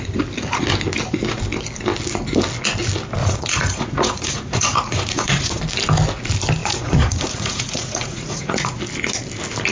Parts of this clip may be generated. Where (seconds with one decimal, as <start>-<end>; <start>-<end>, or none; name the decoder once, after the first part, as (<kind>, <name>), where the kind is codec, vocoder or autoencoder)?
3.2-5.6 (vocoder, Vocos); 6.6-8.8